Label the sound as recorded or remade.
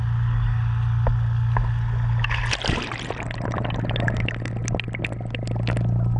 recorded